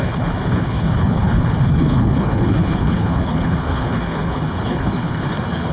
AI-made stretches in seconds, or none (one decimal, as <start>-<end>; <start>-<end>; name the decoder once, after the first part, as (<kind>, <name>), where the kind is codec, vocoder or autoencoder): 0.0-5.7 (codec, HILCodec)